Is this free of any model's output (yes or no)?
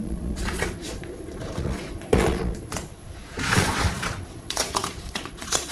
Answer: no